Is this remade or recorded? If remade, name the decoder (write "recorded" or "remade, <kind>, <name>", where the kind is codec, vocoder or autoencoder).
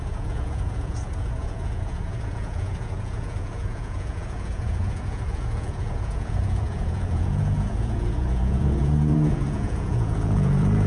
remade, vocoder, Vocos